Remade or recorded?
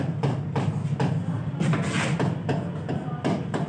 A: recorded